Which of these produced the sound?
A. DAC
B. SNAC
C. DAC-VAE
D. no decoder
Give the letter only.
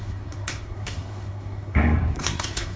B